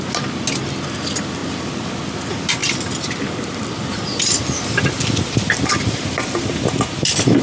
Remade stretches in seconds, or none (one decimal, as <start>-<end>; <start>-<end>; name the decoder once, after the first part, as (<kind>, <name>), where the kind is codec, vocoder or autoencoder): none